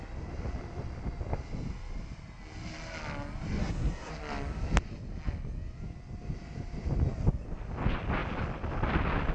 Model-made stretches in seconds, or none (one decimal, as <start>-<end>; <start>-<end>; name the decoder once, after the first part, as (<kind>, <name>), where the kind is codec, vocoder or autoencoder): 3.6-4.1 (codec, SNAC)